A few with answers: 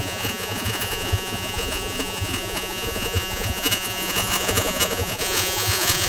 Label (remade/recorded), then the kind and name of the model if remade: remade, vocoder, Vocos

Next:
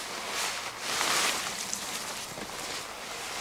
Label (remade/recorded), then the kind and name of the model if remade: recorded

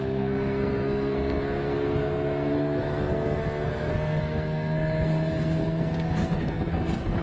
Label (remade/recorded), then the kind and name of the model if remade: remade, codec, SNAC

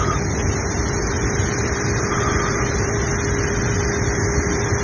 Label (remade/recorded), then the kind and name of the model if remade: recorded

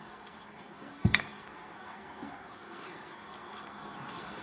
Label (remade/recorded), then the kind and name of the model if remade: remade, codec, SNAC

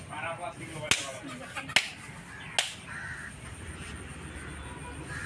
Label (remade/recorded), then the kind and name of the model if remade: recorded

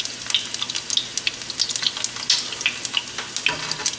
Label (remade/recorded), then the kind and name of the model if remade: recorded